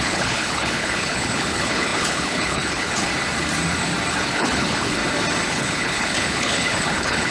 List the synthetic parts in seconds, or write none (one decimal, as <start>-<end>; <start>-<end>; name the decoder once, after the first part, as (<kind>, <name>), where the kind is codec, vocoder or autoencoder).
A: 0.0-3.1 (codec, HILCodec); 4.1-5.0; 5.5-7.3